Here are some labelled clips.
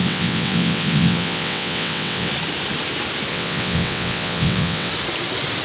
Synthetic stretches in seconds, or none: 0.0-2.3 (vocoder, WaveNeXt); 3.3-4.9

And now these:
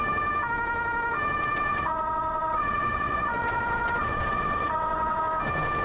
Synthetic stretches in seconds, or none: 1.7-5.2 (vocoder, WaveNeXt)

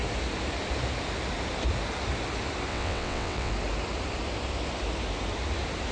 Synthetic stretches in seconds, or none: 2.7-3.5 (vocoder, WaveNeXt)

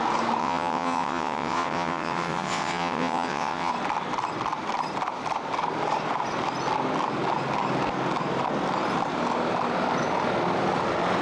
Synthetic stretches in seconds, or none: 0.4-3.7 (vocoder, WaveNeXt)

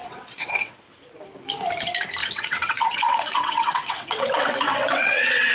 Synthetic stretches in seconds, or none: 0.0-0.8 (vocoder, WaveNeXt); 2.2-5.5

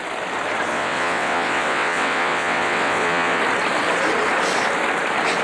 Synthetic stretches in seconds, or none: 0.7-3.4 (vocoder, WaveNeXt)

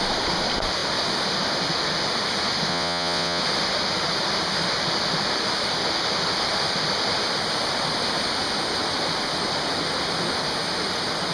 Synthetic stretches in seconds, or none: 2.7-3.4 (vocoder, WaveNeXt)